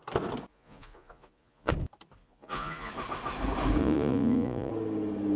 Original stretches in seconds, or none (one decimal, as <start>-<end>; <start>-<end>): 0.0-0.5; 1.7-2.2; 2.9-3.8; 4.7-5.4

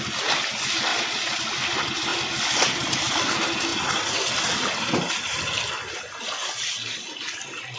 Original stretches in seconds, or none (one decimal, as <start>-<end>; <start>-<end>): 0.0-0.9; 1.4-7.8

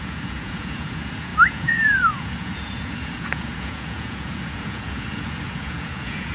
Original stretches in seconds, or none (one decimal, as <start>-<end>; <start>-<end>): none

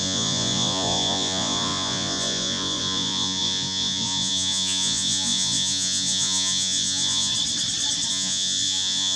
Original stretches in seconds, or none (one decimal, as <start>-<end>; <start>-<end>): 7.3-8.1

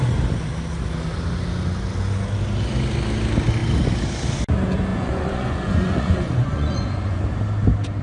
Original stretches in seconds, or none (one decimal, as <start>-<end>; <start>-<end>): 0.0-4.9; 7.2-8.0

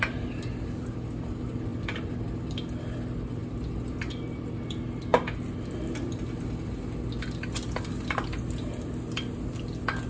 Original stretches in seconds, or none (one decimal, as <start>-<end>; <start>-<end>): 0.0-10.1

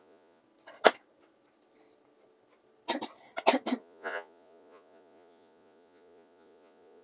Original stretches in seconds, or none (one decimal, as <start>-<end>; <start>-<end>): 0.4-3.8

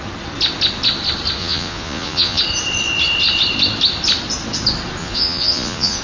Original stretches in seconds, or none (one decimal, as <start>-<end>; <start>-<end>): 0.0-1.4; 2.4-5.0